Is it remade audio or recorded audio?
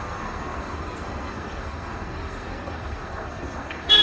remade